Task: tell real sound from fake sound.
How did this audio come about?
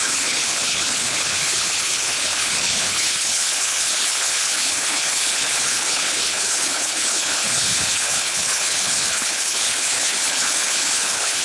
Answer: fake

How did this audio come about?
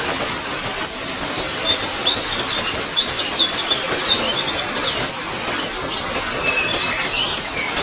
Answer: real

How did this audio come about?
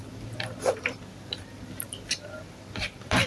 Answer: fake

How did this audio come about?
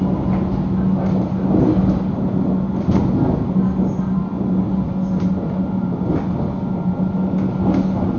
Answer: real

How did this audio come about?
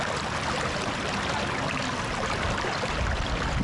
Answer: real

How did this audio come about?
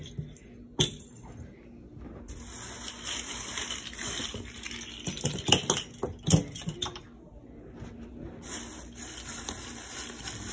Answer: real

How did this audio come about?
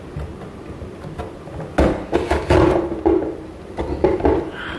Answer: real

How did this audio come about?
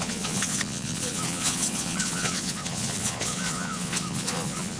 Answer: fake